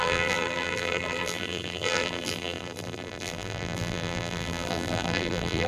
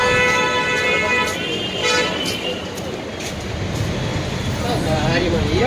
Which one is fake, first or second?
first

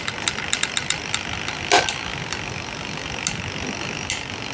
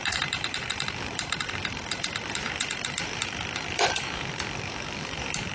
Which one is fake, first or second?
second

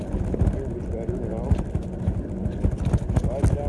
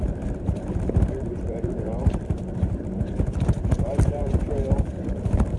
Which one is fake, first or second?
second